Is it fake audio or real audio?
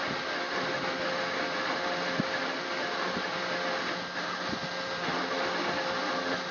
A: real